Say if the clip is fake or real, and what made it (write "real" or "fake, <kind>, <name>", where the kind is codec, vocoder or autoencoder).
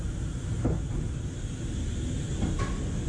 real